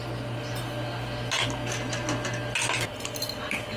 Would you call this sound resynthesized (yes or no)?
no